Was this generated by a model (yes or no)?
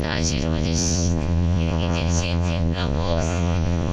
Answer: yes